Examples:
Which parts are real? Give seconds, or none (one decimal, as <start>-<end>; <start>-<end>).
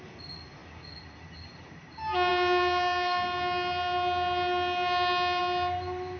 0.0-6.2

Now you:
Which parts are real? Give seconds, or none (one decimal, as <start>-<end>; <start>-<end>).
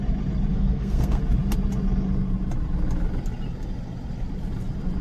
0.0-0.5; 1.2-5.0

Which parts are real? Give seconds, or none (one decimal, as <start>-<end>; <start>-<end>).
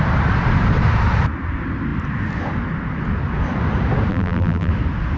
0.0-4.1; 4.7-5.2